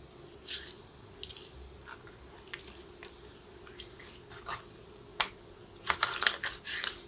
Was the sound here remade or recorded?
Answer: recorded